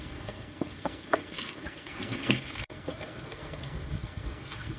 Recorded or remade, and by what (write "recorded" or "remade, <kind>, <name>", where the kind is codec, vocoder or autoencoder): remade, codec, SNAC